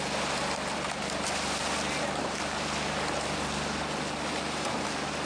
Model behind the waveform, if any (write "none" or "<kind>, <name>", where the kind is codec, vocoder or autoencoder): none